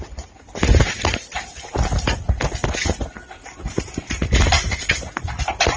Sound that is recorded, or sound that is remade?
recorded